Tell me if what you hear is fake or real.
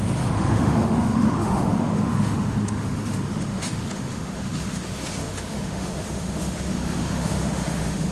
fake